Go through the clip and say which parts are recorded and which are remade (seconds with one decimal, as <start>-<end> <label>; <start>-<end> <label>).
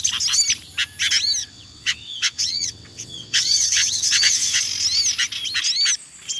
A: 0.0-1.4 recorded; 1.4-4.6 remade; 4.6-6.4 recorded